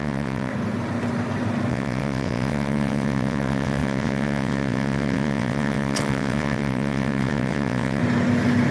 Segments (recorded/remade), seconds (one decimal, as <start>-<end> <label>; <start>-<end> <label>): 0.0-0.5 remade; 0.5-1.7 recorded; 1.7-8.0 remade; 8.0-8.7 recorded